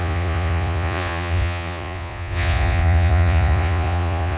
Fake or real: fake